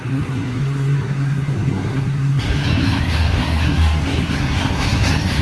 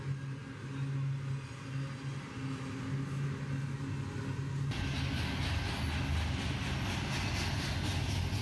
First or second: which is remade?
first